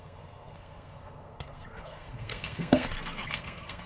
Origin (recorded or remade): remade